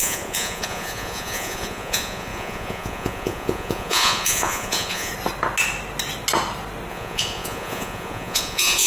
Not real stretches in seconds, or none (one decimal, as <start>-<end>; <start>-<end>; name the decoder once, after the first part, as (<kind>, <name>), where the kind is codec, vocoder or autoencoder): 0.0-5.1 (vocoder, Vocos); 6.9-8.9